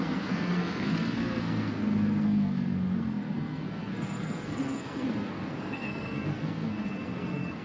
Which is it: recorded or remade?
remade